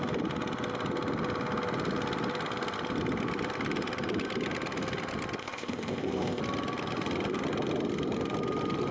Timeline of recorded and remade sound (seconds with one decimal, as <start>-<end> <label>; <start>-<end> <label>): 0.0-5.4 recorded; 5.4-6.4 remade; 6.4-8.9 recorded